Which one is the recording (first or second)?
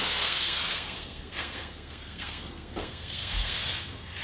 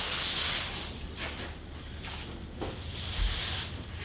second